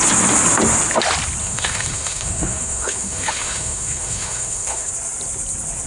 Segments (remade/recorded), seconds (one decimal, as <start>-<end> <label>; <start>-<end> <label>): 0.0-1.4 recorded; 1.4-4.9 remade; 4.9-5.9 recorded